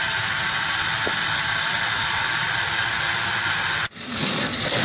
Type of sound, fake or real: fake